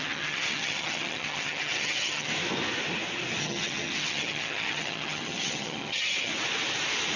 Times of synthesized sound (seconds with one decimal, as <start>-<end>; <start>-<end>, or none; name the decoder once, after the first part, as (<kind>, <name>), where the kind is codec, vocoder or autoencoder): 0.0-2.3 (vocoder, HiFi-GAN); 3.4-6.3